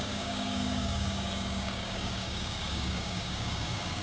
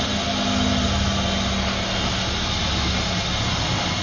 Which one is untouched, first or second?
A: second